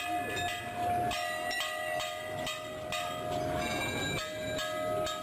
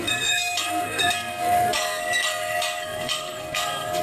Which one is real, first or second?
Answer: first